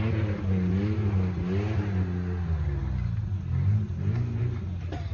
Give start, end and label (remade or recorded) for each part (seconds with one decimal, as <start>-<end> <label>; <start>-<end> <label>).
0.0-5.1 recorded